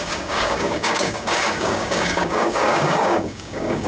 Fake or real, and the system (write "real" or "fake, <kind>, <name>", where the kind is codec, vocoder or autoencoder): fake, codec, DAC